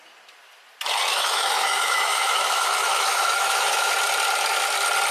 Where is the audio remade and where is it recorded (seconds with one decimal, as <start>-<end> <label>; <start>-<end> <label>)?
0.0-1.1 recorded; 1.1-3.9 remade; 3.9-5.1 recorded